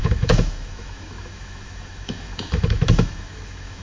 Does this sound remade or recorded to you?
remade